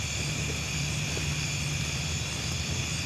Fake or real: real